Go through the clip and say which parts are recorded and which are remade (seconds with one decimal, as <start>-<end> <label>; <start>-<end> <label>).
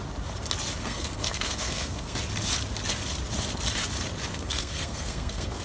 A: 0.0-0.8 recorded; 0.8-2.2 remade; 2.2-4.3 recorded; 4.3-5.6 remade